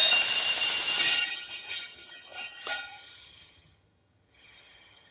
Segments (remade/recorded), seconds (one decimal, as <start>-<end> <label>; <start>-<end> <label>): 0.0-1.0 recorded; 1.0-5.1 remade